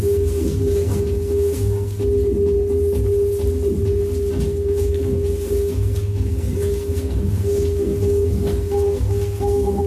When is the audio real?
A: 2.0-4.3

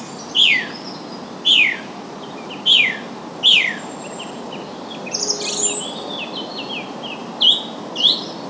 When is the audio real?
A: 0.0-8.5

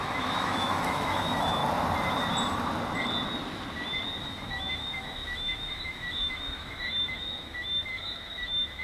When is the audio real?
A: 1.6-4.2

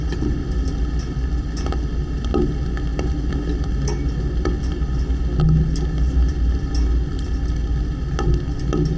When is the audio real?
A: 0.0-9.0